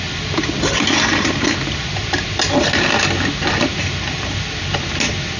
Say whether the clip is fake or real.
real